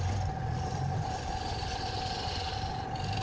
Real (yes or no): yes